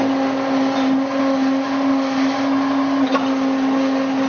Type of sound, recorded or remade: recorded